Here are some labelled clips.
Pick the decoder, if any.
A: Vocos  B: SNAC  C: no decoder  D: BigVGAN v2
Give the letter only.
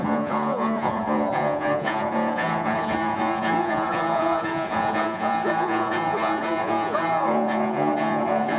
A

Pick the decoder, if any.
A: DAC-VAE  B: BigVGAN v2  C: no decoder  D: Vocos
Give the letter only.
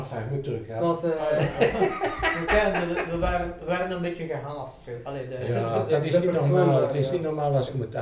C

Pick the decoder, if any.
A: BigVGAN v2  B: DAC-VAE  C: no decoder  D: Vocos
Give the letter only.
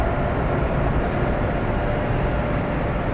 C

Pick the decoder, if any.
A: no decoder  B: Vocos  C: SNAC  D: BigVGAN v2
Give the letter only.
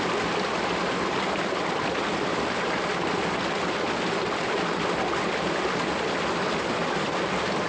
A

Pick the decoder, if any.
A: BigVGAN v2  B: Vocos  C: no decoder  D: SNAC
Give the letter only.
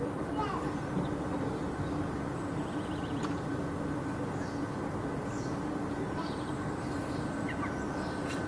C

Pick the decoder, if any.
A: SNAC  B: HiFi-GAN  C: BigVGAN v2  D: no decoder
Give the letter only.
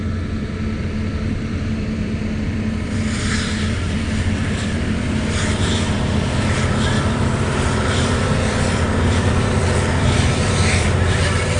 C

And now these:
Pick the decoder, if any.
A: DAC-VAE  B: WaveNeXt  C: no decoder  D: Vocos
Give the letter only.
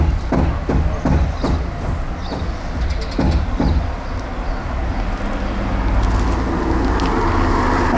C